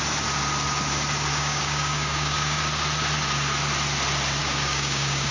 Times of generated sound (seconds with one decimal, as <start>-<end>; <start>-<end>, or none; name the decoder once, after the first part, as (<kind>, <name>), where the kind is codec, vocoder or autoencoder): 1.3-2.6 (codec, DAC); 4.4-5.3

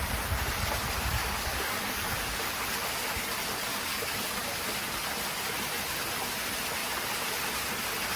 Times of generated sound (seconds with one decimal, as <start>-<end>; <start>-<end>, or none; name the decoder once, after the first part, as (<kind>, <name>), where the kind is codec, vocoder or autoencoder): 1.2-2.5 (codec, DAC); 3.7-4.6

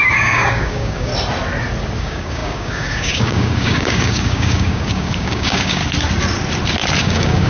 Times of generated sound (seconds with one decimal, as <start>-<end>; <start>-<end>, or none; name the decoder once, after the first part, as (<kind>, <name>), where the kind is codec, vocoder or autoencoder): 0.0-1.1 (codec, DAC); 2.0-5.8; 7.0-7.5